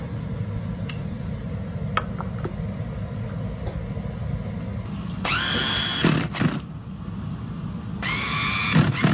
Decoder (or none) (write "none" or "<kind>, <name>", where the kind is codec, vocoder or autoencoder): none